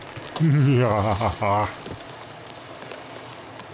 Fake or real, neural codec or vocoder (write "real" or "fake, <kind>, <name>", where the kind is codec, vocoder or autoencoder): real